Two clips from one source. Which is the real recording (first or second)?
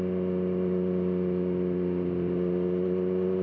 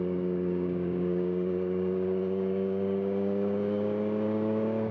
first